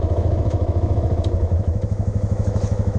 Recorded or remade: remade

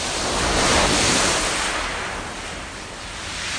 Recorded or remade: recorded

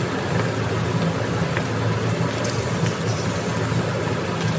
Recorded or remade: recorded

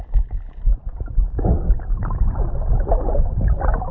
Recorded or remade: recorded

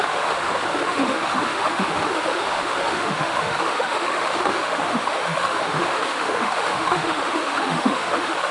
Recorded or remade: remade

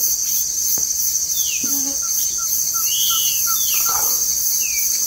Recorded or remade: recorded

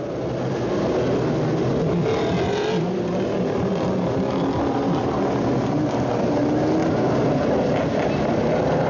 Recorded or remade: recorded